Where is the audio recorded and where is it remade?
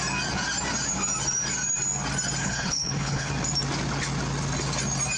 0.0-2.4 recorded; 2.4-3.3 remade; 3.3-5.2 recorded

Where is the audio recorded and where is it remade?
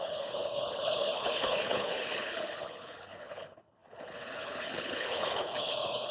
0.0-6.1 remade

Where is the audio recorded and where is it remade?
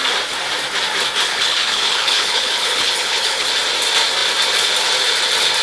0.0-1.3 recorded; 1.3-3.5 remade; 3.5-5.6 recorded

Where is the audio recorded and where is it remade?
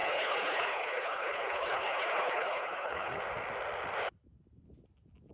0.0-3.2 remade; 3.2-5.3 recorded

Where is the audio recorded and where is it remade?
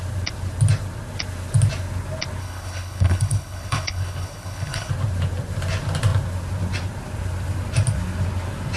0.0-2.4 recorded; 2.4-4.9 remade; 4.9-8.8 recorded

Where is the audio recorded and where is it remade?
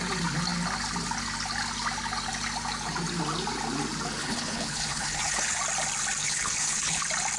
0.0-4.2 recorded; 4.2-5.6 remade; 5.6-6.2 recorded; 6.2-7.0 remade; 7.0-7.4 recorded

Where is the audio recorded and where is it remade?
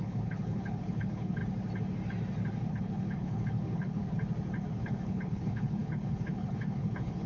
0.0-1.4 remade; 1.4-2.7 recorded; 2.7-4.0 remade; 4.0-4.7 recorded; 4.7-7.3 remade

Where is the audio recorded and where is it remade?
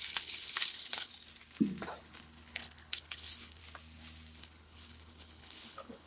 0.0-1.1 remade; 1.1-2.0 recorded; 2.0-3.6 remade; 3.6-4.4 recorded; 4.4-6.1 remade